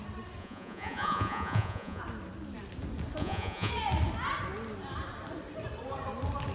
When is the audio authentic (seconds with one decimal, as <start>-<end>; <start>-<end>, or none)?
0.0-0.4; 2.0-3.2; 3.7-6.5